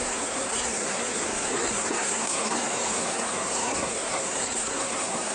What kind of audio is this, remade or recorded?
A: remade